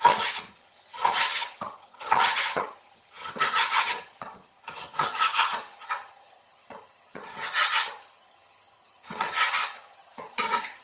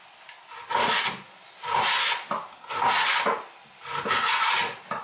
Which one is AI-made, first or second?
first